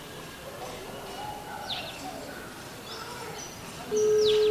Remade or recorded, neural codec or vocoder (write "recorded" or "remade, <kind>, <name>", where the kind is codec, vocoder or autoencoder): recorded